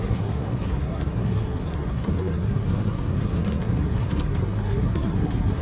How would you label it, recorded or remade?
remade